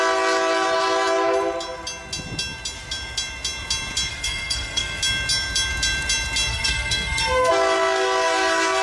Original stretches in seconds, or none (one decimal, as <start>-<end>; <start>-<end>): 0.0-4.1; 5.0-6.5; 7.5-8.8